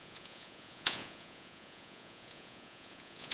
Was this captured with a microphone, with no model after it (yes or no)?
no